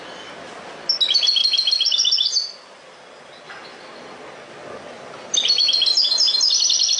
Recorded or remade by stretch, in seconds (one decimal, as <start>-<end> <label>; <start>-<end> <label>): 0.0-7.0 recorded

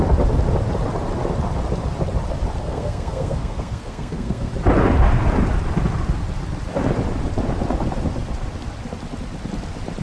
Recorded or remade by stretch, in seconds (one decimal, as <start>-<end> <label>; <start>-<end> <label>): 0.0-2.6 recorded; 2.6-4.5 remade; 4.5-10.0 recorded

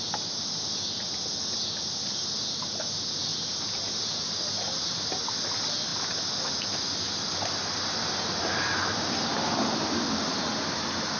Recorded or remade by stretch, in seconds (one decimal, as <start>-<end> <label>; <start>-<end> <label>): 0.0-11.2 recorded